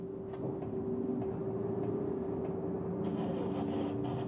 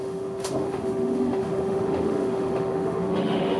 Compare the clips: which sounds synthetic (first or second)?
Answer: second